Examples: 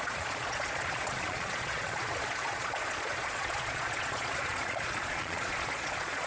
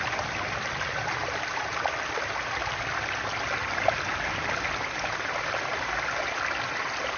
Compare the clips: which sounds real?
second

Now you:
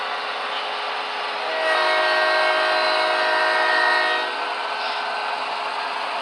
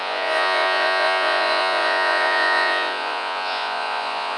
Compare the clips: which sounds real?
first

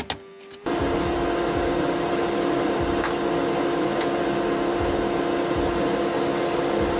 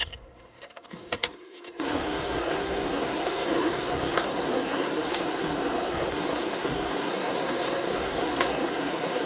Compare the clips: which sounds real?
first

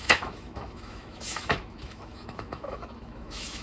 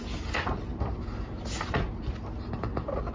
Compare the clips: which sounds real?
second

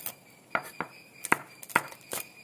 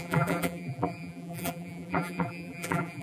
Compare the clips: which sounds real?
first